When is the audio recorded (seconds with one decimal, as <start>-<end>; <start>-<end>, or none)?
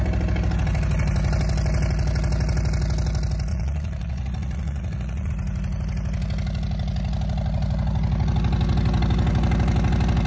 0.0-3.5; 5.3-10.3